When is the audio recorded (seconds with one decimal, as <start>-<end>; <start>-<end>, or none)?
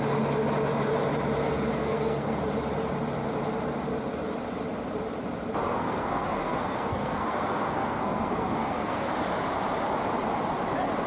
0.0-1.7; 2.4-5.7; 9.1-11.1